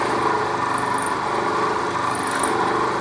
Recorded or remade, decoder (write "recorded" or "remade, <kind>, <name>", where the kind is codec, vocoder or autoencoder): recorded